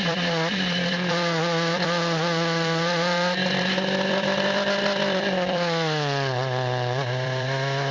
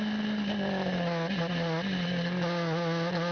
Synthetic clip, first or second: first